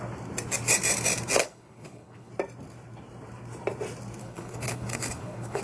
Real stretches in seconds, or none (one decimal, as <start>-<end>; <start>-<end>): 0.0-1.4; 2.3-4.2